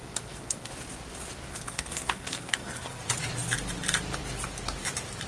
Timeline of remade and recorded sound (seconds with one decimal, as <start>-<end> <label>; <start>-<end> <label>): 0.0-0.7 remade; 0.7-1.5 recorded; 1.5-3.0 remade; 3.0-5.3 recorded